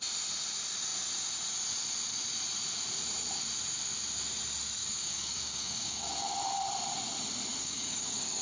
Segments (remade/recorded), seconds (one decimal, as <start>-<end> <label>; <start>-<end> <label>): 0.0-4.8 recorded; 4.8-6.1 remade; 6.1-7.6 recorded; 7.6-8.4 remade